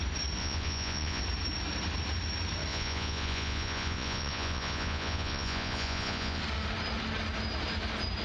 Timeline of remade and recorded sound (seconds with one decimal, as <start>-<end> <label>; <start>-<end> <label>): 0.0-0.4 recorded; 0.4-1.2 remade; 1.2-2.7 recorded; 2.7-6.4 remade; 6.4-8.2 recorded

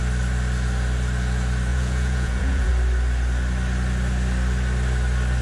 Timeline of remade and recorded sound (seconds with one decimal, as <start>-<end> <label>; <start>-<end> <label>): 0.0-1.7 recorded; 1.7-2.7 remade; 2.7-5.4 recorded

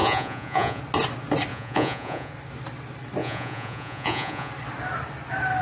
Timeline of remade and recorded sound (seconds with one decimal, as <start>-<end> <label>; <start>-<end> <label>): 0.0-0.8 remade; 0.8-1.5 recorded; 1.5-2.3 remade; 2.3-3.2 recorded; 3.2-4.5 remade; 4.5-5.6 recorded

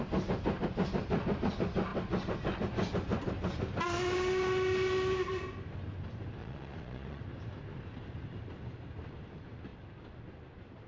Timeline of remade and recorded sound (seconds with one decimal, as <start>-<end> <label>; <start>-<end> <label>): 0.0-6.4 recorded; 6.4-7.2 remade; 7.2-10.9 recorded